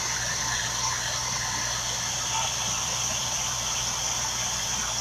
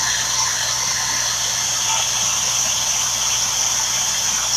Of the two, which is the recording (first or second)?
second